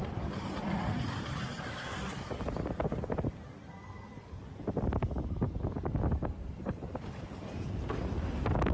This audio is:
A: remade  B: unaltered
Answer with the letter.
B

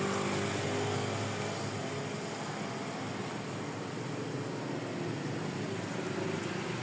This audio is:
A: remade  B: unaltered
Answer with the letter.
B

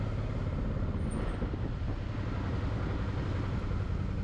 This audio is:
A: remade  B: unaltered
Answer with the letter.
B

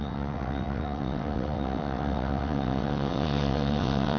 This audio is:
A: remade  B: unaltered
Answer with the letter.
A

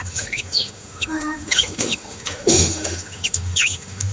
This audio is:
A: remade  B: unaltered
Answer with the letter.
A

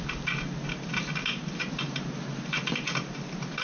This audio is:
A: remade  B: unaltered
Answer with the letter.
B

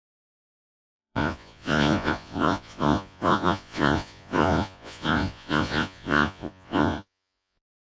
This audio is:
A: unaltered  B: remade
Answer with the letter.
B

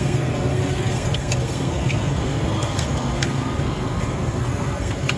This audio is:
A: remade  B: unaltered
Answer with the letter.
A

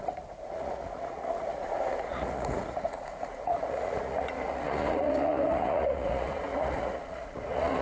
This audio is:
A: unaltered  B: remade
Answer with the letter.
B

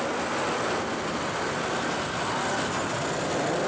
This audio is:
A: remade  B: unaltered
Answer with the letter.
B